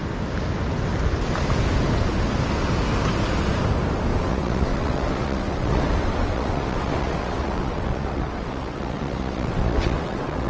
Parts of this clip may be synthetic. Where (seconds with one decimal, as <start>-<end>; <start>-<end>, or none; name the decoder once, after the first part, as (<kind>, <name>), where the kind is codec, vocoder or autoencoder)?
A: 4.2-10.5 (vocoder, WaveNeXt)